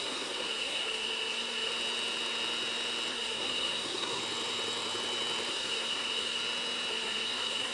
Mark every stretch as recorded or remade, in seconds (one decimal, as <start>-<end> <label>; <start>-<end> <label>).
0.0-1.7 remade; 1.7-3.1 recorded; 3.1-4.2 remade; 4.2-5.5 recorded; 5.5-6.4 remade; 6.4-6.9 recorded; 6.9-7.7 remade